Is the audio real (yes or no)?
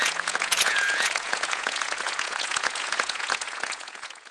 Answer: no